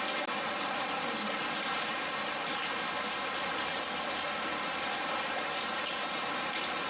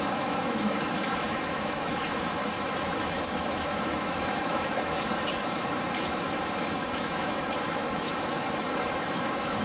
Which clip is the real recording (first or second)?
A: first